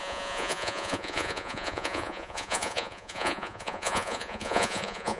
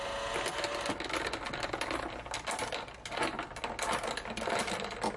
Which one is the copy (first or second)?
first